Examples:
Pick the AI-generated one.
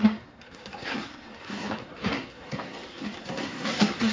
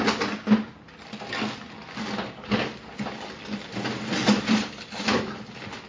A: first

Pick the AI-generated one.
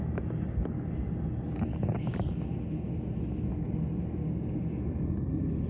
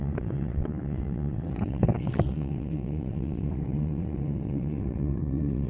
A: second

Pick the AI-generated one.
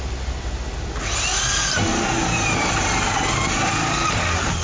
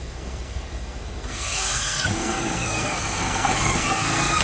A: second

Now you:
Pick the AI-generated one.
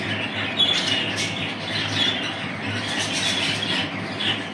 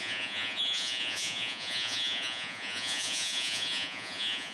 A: second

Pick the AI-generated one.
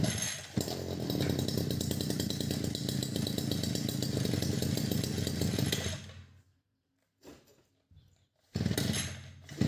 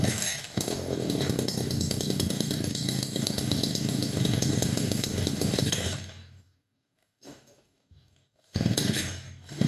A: second